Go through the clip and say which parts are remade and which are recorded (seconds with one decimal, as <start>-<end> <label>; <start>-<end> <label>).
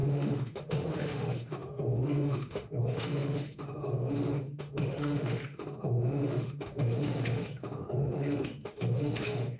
0.0-9.6 remade